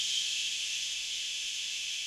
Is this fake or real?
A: fake